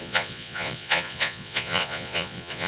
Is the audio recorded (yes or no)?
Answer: no